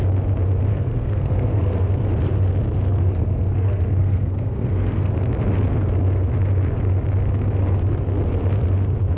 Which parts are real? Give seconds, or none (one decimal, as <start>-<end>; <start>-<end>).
0.0-0.7; 1.9-3.0; 5.1-9.2